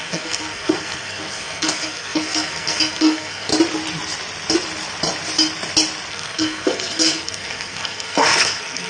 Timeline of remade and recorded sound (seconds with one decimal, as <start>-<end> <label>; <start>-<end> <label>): 0.0-3.5 remade; 3.5-6.1 recorded; 6.1-8.9 remade